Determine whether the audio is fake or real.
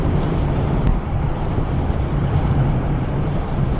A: fake